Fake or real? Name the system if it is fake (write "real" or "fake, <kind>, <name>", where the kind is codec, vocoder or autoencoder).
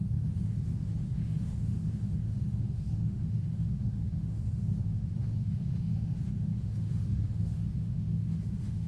fake, autoencoder, DAC-VAE